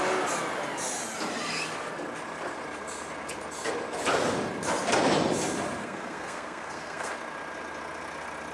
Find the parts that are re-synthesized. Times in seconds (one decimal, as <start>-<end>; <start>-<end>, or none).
5.8-7.1